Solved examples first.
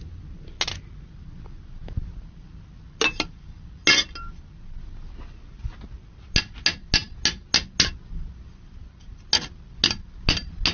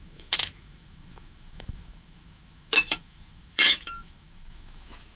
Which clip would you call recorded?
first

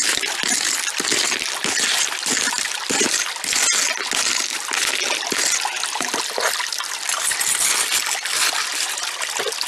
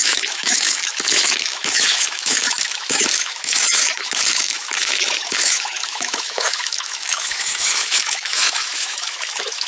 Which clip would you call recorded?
first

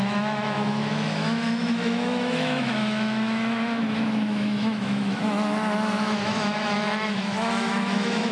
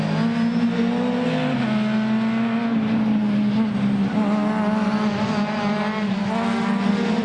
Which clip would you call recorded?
second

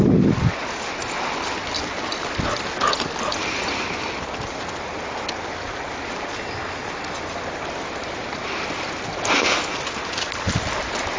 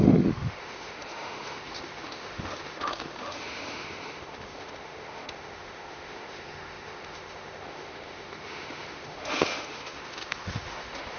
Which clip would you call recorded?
first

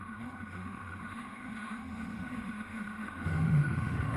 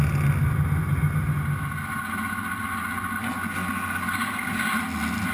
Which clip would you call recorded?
second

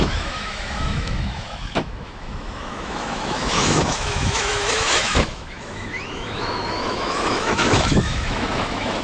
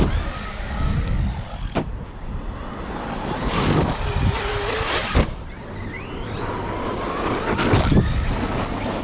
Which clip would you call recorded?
second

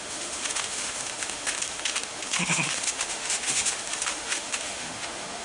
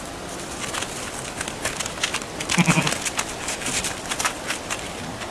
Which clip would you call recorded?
second